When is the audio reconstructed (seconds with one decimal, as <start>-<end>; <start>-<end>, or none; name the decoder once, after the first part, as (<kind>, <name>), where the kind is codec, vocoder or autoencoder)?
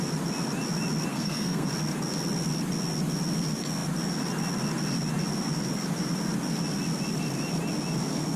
1.1-1.7 (codec, SNAC)